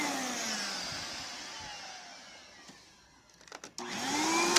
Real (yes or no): yes